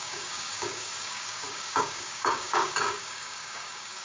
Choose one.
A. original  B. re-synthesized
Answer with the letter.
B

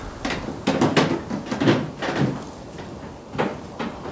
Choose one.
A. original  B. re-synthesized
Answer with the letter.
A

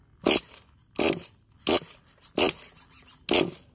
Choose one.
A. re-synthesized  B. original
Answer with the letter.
B